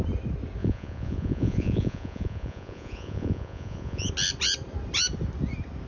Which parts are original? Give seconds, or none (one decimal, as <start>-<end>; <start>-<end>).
0.0-0.6; 4.1-5.9